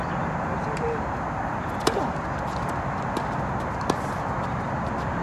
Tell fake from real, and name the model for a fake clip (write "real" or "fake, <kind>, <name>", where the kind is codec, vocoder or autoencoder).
real